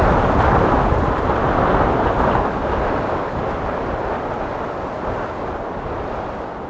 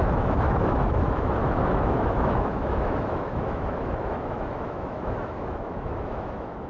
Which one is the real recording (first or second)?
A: first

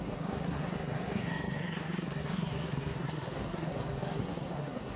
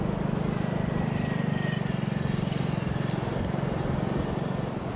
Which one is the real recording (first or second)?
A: second